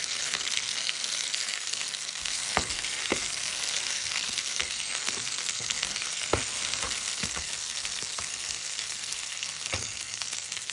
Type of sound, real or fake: fake